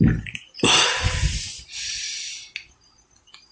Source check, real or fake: real